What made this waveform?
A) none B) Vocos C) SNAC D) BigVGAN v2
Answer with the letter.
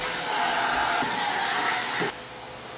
A